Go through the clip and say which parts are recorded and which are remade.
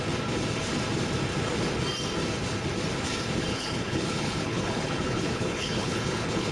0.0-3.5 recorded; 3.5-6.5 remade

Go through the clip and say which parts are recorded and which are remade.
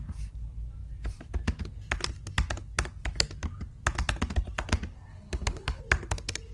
0.0-5.1 recorded; 5.1-5.8 remade; 5.8-6.5 recorded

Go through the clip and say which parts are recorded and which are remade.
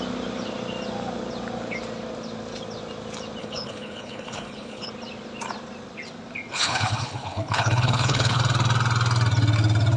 0.0-3.4 recorded; 3.4-4.9 remade; 4.9-6.5 recorded; 6.5-8.4 remade; 8.4-10.0 recorded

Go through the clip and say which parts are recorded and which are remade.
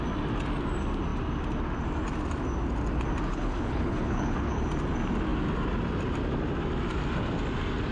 0.0-3.3 recorded; 3.3-4.7 remade; 4.7-7.9 recorded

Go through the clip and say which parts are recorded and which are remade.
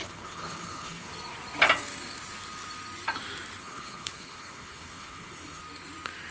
0.0-1.1 remade; 1.1-3.6 recorded; 3.6-5.6 remade; 5.6-6.3 recorded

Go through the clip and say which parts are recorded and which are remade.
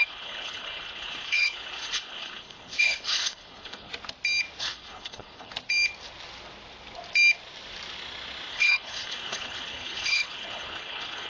0.0-3.9 remade; 3.9-4.6 recorded; 4.6-5.5 remade; 5.5-8.5 recorded; 8.5-11.3 remade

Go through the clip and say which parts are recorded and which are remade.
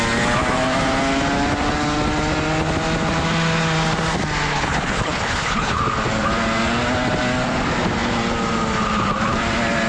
0.0-4.5 recorded; 4.5-5.8 remade; 5.8-9.9 recorded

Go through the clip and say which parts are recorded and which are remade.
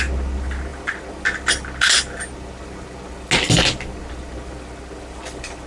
0.0-5.7 recorded